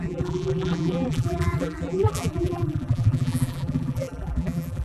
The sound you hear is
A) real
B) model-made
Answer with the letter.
B